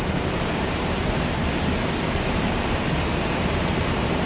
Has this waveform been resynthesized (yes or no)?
yes